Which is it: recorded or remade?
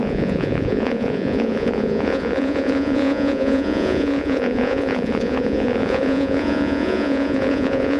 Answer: remade